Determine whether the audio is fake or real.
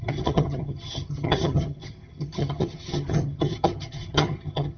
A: fake